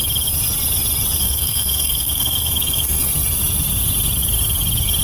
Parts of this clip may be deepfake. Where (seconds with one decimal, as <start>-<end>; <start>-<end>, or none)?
1.2-3.1